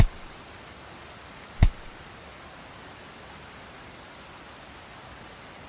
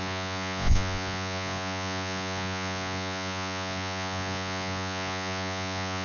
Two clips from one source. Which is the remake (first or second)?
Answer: second